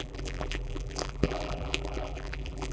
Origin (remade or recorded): remade